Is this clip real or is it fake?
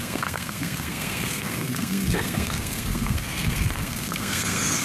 fake